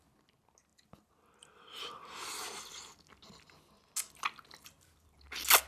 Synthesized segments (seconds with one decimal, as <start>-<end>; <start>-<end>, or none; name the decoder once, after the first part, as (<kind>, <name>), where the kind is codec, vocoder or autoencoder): none